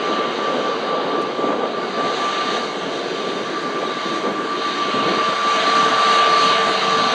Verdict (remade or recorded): recorded